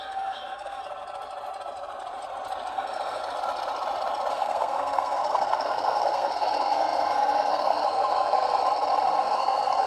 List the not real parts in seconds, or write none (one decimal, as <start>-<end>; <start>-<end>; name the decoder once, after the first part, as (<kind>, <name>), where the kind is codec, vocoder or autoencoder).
0.0-0.8 (codec, SNAC); 2.7-3.2; 4.3-8.6; 9.2-9.9